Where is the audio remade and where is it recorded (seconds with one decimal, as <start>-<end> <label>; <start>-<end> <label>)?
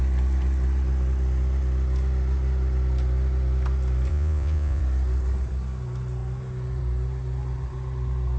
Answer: 0.0-4.1 recorded; 4.1-4.8 remade; 4.8-8.4 recorded